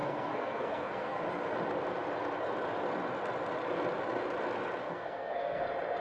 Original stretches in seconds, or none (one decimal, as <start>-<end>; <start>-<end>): 1.2-4.8; 5.6-6.0